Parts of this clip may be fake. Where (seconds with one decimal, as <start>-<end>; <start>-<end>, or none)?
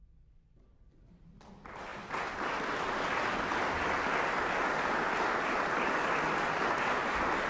none